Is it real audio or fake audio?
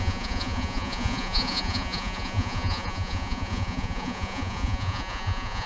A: fake